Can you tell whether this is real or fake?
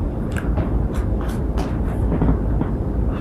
real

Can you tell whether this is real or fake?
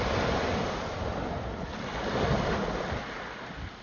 real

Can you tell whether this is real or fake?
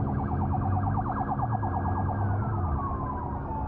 real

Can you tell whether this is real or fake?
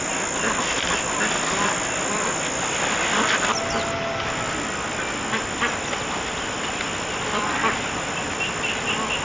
real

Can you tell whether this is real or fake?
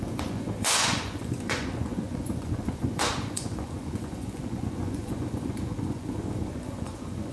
fake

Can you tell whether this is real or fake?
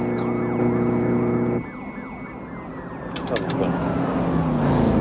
real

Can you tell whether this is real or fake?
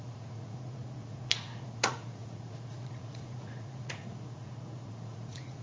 fake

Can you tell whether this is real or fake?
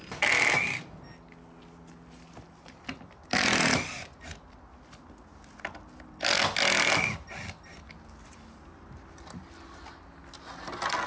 real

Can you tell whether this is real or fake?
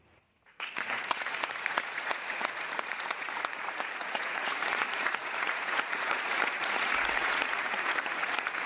fake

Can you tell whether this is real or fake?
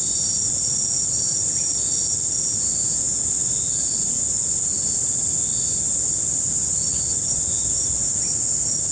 real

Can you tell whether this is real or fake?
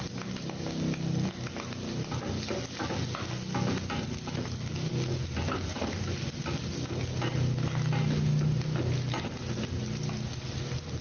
real